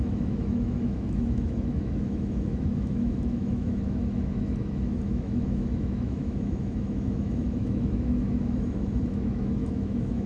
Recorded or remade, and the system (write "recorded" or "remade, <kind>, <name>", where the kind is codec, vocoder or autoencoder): remade, autoencoder, DAC-VAE